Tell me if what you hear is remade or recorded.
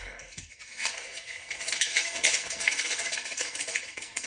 remade